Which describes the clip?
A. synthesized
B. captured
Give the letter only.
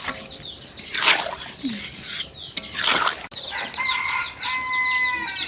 B